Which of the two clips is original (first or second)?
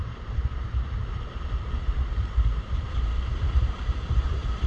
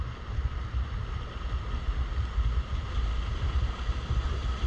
second